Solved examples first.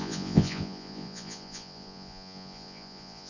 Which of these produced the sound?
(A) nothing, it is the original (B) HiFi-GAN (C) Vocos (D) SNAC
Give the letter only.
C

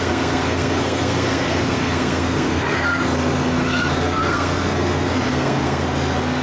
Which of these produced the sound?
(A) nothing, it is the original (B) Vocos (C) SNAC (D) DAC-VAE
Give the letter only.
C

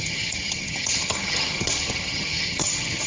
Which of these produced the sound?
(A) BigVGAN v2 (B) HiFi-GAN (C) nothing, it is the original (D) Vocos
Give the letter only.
B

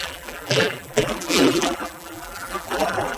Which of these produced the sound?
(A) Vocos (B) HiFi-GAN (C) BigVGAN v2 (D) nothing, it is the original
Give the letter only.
C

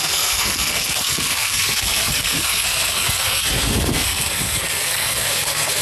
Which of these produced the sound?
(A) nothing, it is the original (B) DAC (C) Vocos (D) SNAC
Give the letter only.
D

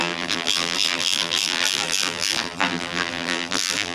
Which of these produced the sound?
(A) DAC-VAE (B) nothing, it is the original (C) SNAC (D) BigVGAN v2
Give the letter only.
D